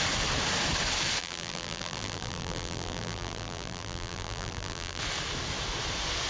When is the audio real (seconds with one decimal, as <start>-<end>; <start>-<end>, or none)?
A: 0.0-1.2; 5.0-6.3